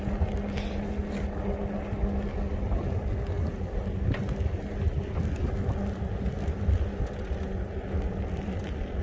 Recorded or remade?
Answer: recorded